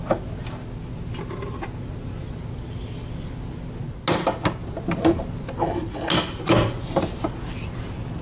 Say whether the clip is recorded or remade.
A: recorded